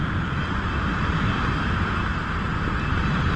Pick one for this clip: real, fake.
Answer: real